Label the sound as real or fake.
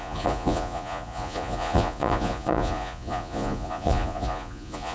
fake